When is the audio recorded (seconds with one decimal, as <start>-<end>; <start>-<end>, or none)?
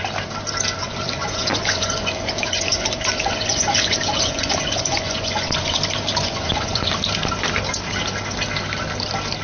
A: 0.0-0.8; 5.8-6.2; 6.9-9.4